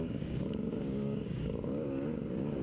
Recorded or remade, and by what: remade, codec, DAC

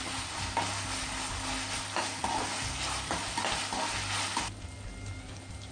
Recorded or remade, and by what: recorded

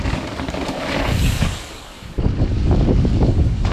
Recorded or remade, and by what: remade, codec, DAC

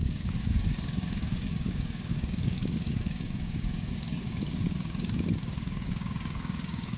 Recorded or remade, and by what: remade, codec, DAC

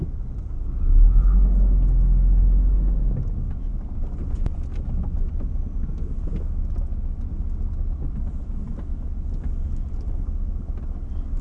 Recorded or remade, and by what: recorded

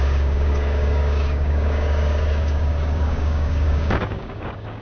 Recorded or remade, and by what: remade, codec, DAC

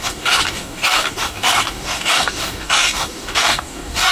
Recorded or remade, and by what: remade, codec, DAC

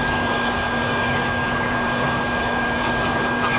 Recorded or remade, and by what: remade, codec, DAC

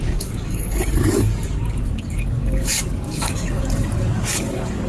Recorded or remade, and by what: remade, codec, DAC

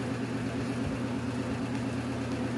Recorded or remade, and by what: recorded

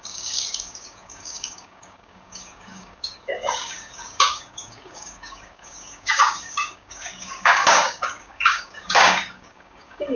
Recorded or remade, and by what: remade, codec, DAC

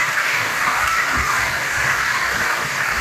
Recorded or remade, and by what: remade, codec, DAC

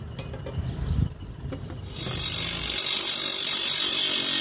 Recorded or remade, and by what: recorded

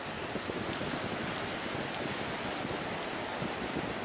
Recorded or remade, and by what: recorded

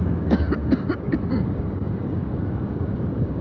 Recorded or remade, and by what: remade, codec, DAC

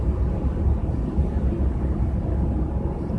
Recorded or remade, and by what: recorded